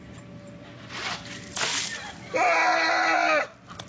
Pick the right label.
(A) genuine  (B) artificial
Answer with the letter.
A